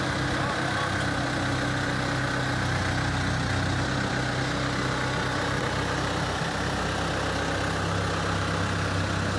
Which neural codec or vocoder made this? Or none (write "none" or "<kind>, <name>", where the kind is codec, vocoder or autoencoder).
none